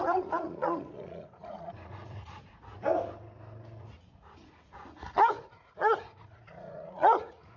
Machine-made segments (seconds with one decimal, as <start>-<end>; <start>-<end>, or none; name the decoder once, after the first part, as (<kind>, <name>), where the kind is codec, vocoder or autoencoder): 0.0-2.7 (vocoder, Vocos); 3.8-7.6

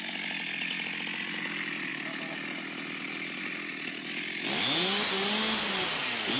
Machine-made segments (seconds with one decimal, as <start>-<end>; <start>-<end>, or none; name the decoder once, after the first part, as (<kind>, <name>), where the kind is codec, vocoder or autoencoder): none

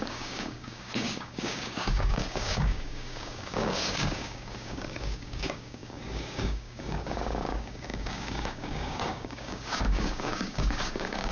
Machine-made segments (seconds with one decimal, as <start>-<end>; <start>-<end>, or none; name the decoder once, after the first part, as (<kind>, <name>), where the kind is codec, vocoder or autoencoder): 0.0-11.3 (codec, DAC)